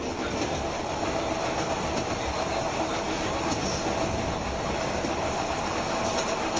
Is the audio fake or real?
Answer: real